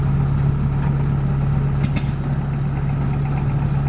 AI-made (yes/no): no